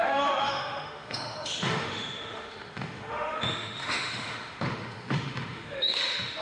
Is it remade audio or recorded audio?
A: remade